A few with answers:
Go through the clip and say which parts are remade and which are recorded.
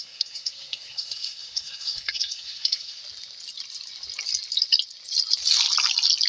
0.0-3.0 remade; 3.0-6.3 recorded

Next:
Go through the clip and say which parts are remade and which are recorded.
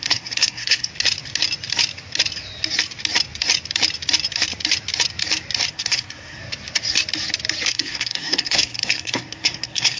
0.0-0.9 remade; 0.9-5.7 recorded; 5.7-6.4 remade; 6.4-7.7 recorded; 7.7-10.0 remade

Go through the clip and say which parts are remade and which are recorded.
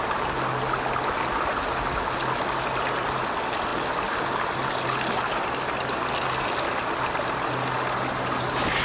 0.0-8.8 recorded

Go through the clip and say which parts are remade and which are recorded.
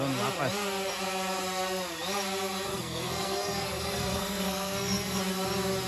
0.0-2.7 recorded; 2.7-5.2 remade; 5.2-5.9 recorded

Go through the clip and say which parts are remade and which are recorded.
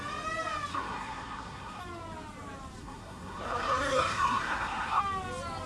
0.0-0.7 recorded; 0.7-1.8 remade; 1.8-2.8 recorded; 2.8-5.0 remade; 5.0-5.7 recorded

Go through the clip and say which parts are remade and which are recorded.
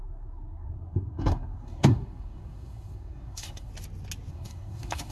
0.0-3.7 remade; 3.7-4.3 recorded; 4.3-5.1 remade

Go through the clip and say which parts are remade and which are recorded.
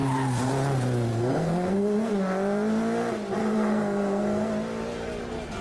0.0-1.1 recorded; 1.1-2.1 remade; 2.1-3.4 recorded; 3.4-4.5 remade; 4.5-5.6 recorded